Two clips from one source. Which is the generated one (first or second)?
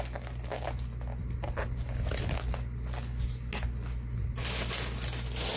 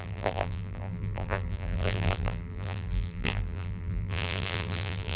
second